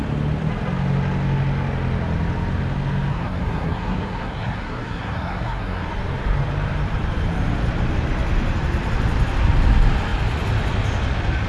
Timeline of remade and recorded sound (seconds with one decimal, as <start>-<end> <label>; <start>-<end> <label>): 0.0-3.1 recorded; 3.1-5.9 remade; 5.9-11.5 recorded